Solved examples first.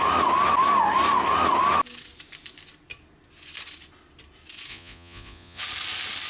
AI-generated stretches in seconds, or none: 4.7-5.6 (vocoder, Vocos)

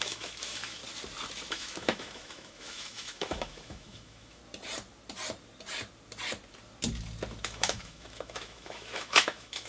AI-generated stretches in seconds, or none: 0.0-0.8 (autoencoder, DAC-VAE); 1.5-4.4; 7.4-9.7

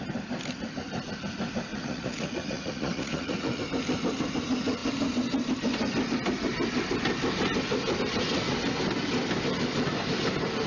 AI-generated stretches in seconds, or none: 1.7-3.6 (vocoder, Vocos)

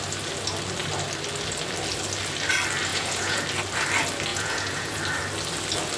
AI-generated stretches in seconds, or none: 2.9-3.4 (vocoder, Vocos); 4.3-5.0

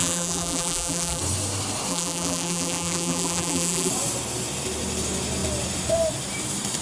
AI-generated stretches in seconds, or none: 0.0-1.2 (vocoder, BigVGAN v2); 1.9-3.9

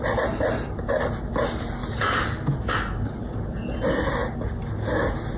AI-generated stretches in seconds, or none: none

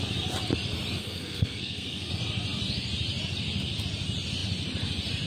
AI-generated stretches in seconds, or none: 1.0-2.1 (codec, SNAC)

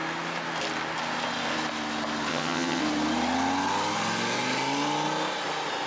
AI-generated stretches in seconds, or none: 2.3-2.8 (vocoder, HiFi-GAN)